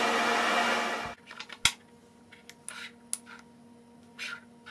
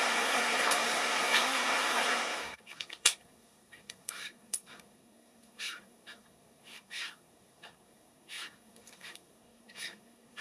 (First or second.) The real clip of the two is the first